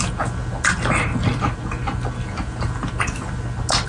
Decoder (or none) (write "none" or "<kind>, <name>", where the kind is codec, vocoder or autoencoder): none